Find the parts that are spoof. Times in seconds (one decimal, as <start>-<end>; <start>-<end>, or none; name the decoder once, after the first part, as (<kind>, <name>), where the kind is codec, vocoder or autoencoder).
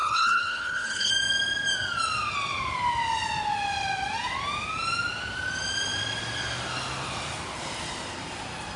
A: 0.0-1.1 (codec, HILCodec)